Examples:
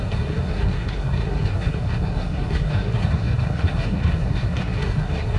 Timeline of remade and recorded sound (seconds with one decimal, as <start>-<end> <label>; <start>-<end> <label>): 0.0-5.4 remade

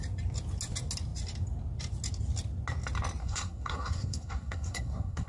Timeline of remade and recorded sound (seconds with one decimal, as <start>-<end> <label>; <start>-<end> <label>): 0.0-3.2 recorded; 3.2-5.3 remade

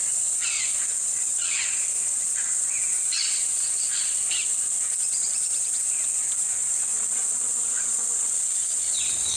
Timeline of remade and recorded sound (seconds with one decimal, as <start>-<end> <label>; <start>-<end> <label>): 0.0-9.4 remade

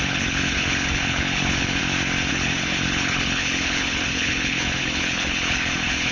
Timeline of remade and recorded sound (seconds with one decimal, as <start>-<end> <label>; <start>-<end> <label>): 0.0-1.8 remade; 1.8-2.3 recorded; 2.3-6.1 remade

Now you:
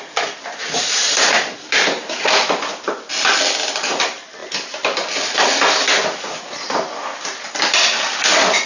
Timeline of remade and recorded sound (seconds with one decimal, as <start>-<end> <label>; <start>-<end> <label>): 0.0-8.7 remade

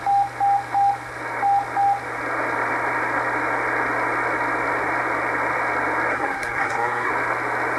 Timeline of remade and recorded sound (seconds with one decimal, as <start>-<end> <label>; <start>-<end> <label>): 0.0-6.1 recorded; 6.1-7.1 remade; 7.1-7.8 recorded